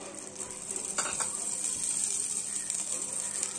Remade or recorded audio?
recorded